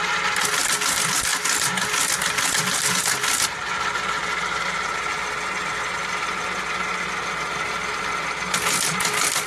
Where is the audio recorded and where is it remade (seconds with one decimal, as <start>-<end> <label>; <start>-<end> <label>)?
0.0-9.5 recorded